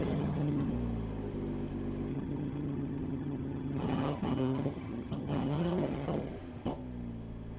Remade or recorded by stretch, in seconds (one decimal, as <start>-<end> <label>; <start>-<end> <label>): 0.0-0.7 remade; 0.7-2.1 recorded; 2.1-6.3 remade; 6.3-7.6 recorded